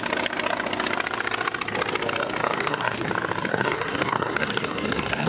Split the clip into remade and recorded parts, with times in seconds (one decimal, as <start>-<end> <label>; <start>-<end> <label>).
0.0-2.4 recorded; 2.4-3.1 remade; 3.1-3.5 recorded; 3.5-5.3 remade